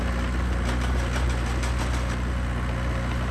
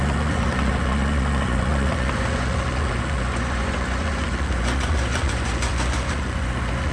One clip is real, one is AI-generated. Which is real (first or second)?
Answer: first